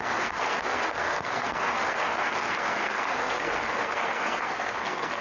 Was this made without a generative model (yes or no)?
no